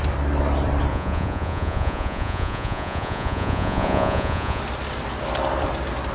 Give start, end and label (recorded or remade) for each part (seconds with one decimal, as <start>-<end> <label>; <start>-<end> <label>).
0.0-0.9 recorded; 0.9-4.6 remade; 4.6-6.1 recorded